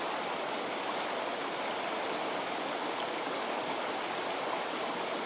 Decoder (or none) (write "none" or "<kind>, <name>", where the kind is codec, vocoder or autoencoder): none